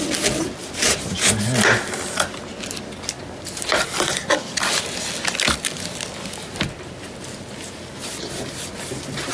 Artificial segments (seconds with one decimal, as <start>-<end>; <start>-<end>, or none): 0.6-1.3